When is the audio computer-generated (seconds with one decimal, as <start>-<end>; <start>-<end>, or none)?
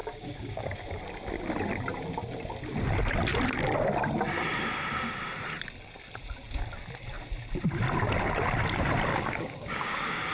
0.0-1.0; 9.1-10.3